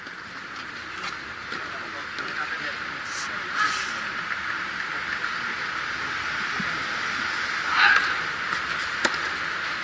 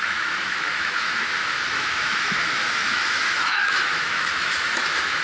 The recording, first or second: first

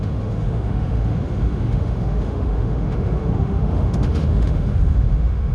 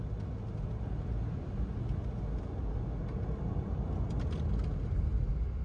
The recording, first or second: second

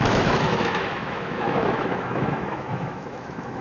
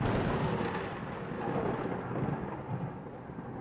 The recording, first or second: second